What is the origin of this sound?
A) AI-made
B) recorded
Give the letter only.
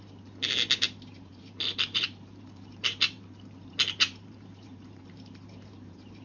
A